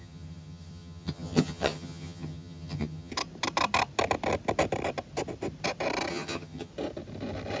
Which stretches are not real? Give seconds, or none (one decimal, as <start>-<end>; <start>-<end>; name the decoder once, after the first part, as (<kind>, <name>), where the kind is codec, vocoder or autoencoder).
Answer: 0.0-3.1 (vocoder, HiFi-GAN); 6.1-6.7